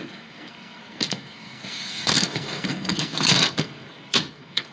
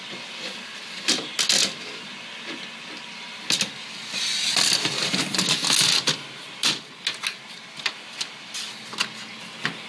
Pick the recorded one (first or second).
second